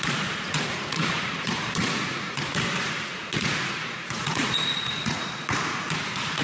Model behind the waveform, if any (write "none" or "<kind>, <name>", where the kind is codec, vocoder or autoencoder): vocoder, Vocos